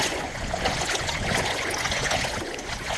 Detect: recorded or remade remade